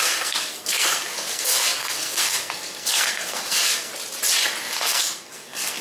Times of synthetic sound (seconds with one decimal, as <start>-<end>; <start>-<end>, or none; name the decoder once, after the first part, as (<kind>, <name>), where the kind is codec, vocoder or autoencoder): 0.0-3.9 (codec, SNAC); 4.6-5.8